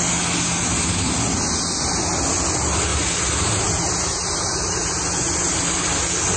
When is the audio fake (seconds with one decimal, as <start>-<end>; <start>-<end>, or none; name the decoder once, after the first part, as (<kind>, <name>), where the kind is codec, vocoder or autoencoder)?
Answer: 2.9-5.5 (vocoder, BigVGAN v2)